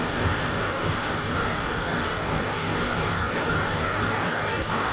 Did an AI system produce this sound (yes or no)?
yes